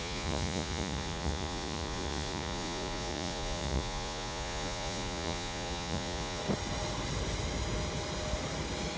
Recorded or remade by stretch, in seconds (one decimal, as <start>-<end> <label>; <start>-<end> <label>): 0.0-6.4 remade; 6.4-9.0 recorded